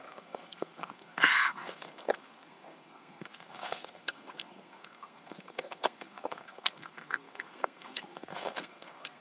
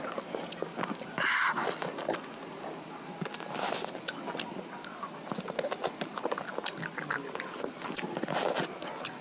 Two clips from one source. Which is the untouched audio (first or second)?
second